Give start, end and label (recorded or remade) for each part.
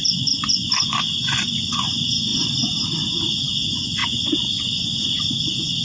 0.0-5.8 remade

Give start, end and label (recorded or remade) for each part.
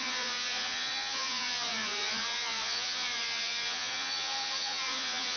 0.0-5.4 remade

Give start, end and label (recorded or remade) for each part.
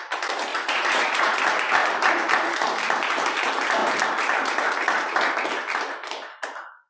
0.0-0.5 recorded; 0.5-1.4 remade; 1.4-6.9 recorded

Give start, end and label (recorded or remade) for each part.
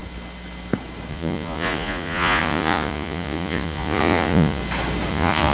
0.0-1.1 recorded; 1.1-4.6 remade; 4.6-5.1 recorded; 5.1-5.5 remade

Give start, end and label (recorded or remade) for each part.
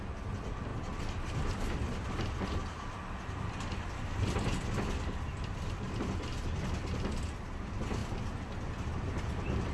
0.0-9.7 recorded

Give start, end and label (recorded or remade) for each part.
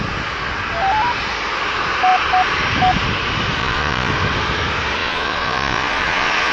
0.0-3.6 recorded; 3.6-4.1 remade; 4.1-5.0 recorded; 5.0-6.5 remade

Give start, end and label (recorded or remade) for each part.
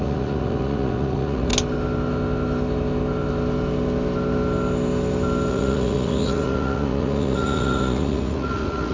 0.0-1.5 remade; 1.5-5.5 recorded; 5.5-8.9 remade